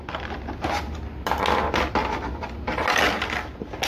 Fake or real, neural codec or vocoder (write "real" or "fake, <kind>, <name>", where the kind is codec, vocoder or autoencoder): real